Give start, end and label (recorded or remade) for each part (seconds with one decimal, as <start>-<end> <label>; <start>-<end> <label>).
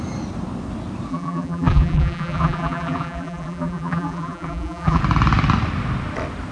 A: 0.0-1.1 recorded; 1.1-5.0 remade; 5.0-6.5 recorded